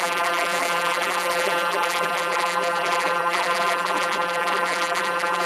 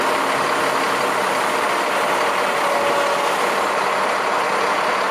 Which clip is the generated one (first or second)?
first